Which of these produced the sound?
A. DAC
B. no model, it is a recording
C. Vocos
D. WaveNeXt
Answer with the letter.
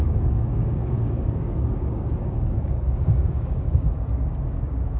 A